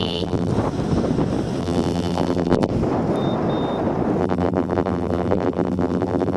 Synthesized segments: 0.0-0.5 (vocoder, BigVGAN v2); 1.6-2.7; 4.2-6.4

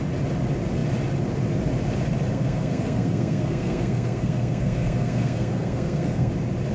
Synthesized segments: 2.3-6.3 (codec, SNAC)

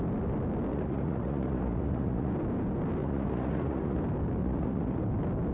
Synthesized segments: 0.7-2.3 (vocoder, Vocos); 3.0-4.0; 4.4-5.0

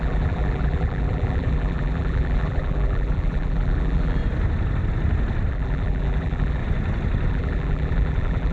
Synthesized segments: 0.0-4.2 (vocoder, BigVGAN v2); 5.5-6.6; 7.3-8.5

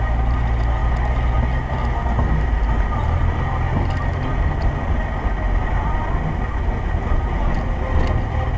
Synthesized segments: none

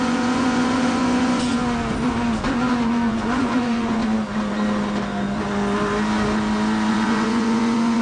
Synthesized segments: 0.0-1.6 (vocoder, Vocos); 2.5-4.0; 6.9-8.0

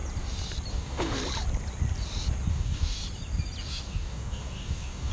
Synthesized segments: 0.7-1.2 (codec, DAC); 2.5-3.0; 3.7-5.1